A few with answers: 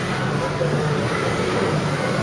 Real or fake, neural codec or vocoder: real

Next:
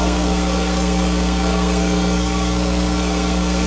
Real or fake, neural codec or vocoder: fake, codec, SNAC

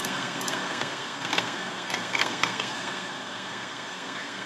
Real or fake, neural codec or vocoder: fake, codec, SNAC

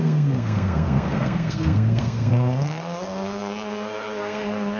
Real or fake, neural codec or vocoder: fake, codec, SNAC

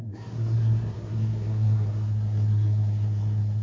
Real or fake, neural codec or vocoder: fake, codec, SNAC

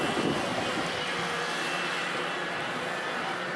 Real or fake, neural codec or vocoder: real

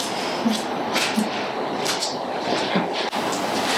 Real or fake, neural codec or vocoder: real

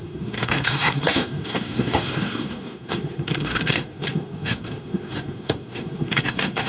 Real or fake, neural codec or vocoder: fake, codec, SNAC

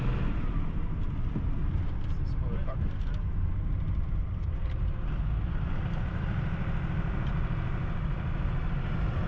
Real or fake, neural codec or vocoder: real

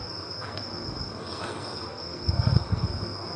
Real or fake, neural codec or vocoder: fake, codec, SNAC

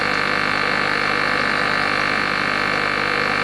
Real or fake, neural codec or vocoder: real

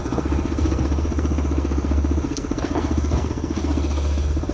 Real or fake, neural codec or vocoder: fake, codec, SNAC